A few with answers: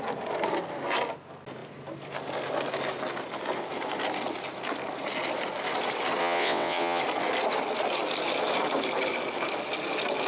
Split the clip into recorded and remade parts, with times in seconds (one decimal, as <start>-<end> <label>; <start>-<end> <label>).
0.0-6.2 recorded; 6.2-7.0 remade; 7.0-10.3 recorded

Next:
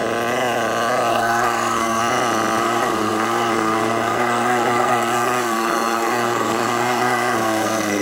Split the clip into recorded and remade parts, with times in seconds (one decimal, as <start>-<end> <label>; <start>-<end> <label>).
0.0-1.1 recorded; 1.1-2.0 remade; 2.0-2.6 recorded; 2.6-8.0 remade

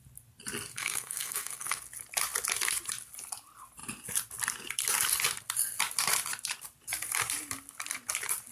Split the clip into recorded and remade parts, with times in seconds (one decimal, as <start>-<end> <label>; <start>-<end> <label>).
0.0-0.7 recorded; 0.7-1.8 remade; 1.8-8.5 recorded

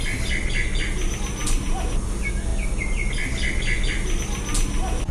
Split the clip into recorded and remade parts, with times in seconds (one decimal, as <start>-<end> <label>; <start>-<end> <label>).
0.0-1.4 recorded; 1.4-2.1 remade; 2.1-5.1 recorded

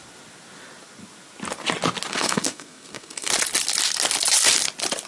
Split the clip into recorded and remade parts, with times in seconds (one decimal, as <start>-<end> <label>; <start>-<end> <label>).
0.0-2.1 recorded; 2.1-3.3 remade; 3.3-5.1 recorded

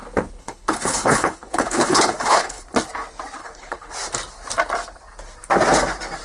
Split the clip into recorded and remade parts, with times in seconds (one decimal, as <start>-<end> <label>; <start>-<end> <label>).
0.0-2.6 remade; 2.6-3.4 recorded; 3.4-3.9 remade; 3.9-6.2 recorded

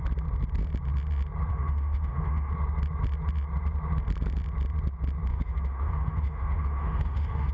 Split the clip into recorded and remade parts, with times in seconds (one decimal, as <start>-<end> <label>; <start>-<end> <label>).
0.0-1.5 recorded; 1.5-2.5 remade; 2.5-5.3 recorded; 5.3-7.5 remade